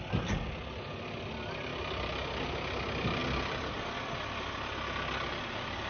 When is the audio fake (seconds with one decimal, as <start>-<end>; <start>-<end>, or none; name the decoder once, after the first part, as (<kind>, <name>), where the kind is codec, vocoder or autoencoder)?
none